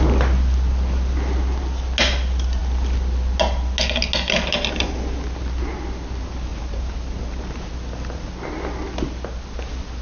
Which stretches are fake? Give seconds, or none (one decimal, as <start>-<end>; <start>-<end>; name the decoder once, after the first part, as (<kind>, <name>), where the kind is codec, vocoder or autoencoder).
6.5-7.7 (vocoder, BigVGAN v2)